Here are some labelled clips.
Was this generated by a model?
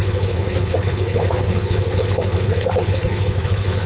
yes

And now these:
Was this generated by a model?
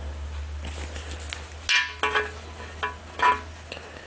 no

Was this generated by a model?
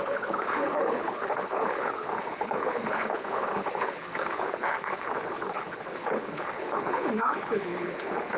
yes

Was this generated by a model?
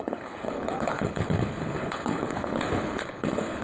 yes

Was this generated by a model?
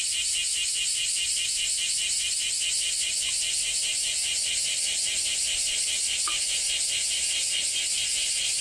no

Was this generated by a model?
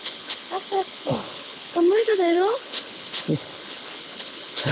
yes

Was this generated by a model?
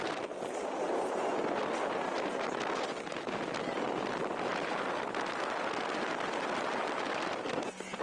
no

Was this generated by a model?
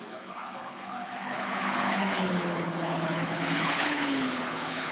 yes